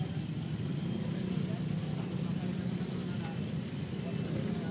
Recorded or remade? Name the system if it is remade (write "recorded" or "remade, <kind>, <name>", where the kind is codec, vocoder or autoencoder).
recorded